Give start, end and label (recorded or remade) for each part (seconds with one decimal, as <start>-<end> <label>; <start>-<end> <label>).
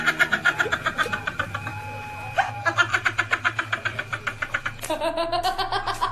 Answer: 0.0-6.1 recorded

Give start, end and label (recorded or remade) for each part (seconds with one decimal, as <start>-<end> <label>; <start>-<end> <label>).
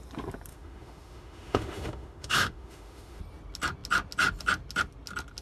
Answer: 0.0-0.5 recorded; 0.5-3.2 remade; 3.2-5.4 recorded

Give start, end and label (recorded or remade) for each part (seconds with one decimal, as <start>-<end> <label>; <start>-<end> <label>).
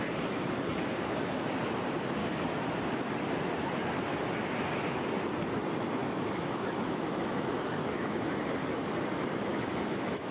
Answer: 0.0-2.2 recorded; 2.2-2.7 remade; 2.7-6.0 recorded; 6.0-8.2 remade; 8.2-9.5 recorded; 9.5-10.3 remade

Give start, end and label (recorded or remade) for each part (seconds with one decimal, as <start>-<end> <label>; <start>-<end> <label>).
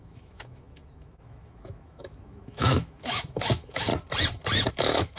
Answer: 0.0-3.9 remade; 3.9-4.7 recorded; 4.7-5.2 remade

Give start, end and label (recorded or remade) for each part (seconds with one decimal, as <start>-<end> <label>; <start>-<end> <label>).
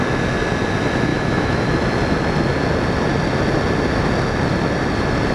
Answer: 0.0-1.1 recorded; 1.1-1.7 remade; 1.7-5.3 recorded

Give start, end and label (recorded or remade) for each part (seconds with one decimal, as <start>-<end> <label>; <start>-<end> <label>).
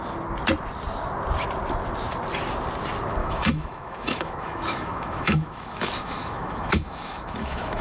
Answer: 0.0-3.2 recorded; 3.2-7.8 remade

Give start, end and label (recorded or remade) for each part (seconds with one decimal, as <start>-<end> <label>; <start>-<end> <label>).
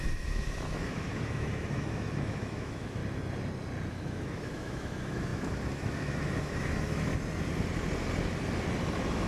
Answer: 0.0-3.0 remade; 3.0-3.9 recorded; 3.9-7.1 remade; 7.1-8.9 recorded; 8.9-9.3 remade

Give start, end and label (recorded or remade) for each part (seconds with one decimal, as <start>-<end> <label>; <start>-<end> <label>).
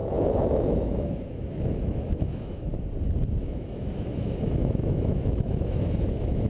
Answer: 0.0-2.7 remade; 2.7-3.4 recorded; 3.4-6.5 remade